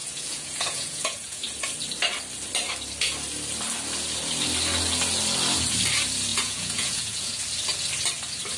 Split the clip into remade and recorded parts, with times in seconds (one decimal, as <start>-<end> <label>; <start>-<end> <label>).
0.0-1.4 remade; 1.4-6.3 recorded; 6.3-7.4 remade; 7.4-8.6 recorded